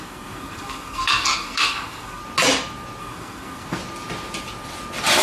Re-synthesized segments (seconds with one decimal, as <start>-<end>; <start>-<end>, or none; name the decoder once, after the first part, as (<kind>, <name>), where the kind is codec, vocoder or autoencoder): 0.0-2.2 (codec, SNAC); 3.0-3.8